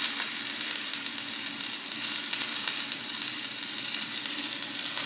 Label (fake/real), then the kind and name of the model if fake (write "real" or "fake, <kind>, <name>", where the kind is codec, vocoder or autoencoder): real